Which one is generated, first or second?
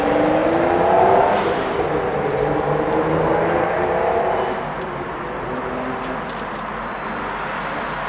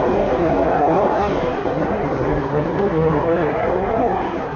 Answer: second